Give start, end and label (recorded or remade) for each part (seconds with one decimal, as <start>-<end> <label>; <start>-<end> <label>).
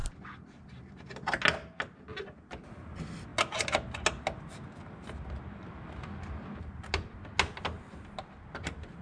0.0-9.0 recorded